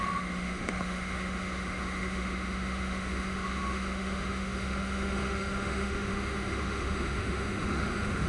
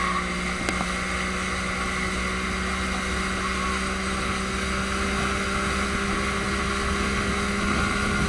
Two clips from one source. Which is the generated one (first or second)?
first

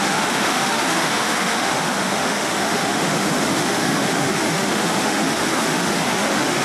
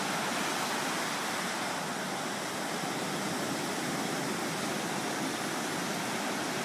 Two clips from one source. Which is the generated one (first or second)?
first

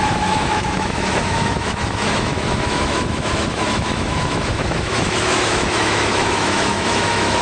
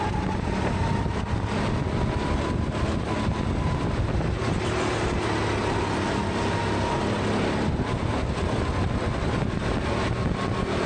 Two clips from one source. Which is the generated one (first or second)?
first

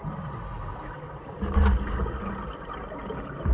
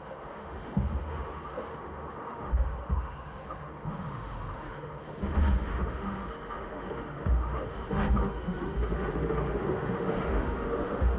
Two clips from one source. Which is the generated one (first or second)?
second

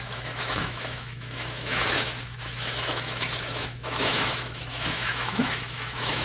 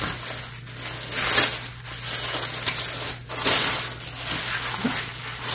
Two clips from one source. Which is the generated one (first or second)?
first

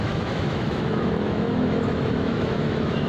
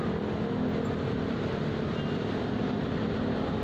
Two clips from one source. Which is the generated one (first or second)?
first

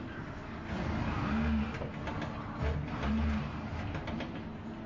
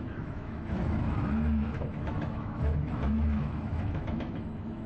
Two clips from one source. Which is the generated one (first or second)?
second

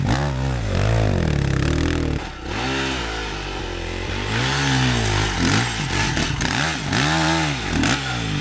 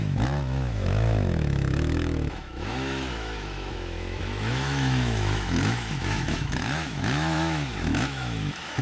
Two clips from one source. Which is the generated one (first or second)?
second